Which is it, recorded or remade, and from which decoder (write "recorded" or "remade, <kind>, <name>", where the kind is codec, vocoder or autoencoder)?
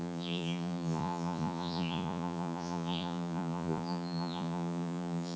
remade, vocoder, Vocos